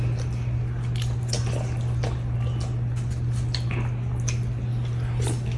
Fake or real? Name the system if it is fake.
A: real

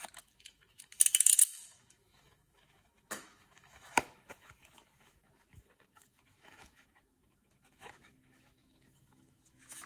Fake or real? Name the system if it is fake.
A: fake, autoencoder, DAC-VAE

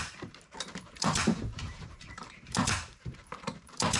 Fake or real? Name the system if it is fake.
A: fake, vocoder, BigVGAN v2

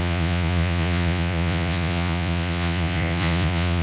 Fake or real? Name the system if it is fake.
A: fake, vocoder, Vocos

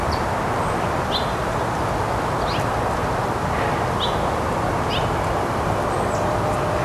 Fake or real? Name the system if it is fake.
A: real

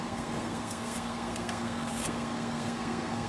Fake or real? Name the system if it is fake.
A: fake, codec, SNAC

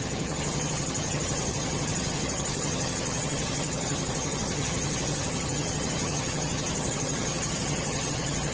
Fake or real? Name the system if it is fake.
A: fake, vocoder, HiFi-GAN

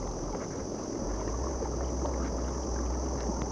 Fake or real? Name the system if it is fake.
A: real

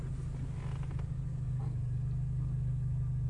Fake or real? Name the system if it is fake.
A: real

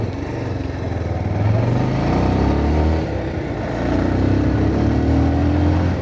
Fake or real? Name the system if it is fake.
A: real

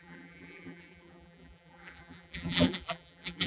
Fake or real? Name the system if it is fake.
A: fake, vocoder, BigVGAN v2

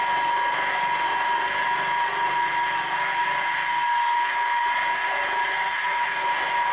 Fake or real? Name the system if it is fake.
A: real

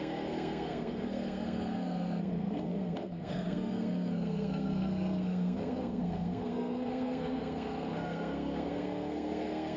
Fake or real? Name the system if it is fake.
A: fake, codec, SNAC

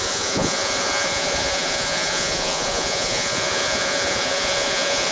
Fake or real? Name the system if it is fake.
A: fake, vocoder, Vocos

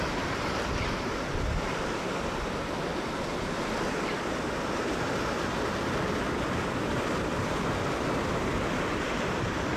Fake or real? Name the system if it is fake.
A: real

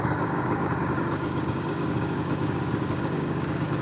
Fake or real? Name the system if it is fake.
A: fake, codec, DAC